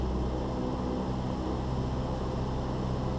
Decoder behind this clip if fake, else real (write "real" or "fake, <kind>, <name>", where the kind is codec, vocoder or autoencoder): real